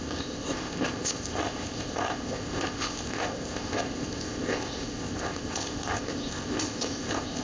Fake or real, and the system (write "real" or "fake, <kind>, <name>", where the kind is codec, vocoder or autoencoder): fake, codec, ZipCodec